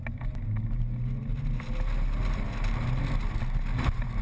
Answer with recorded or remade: recorded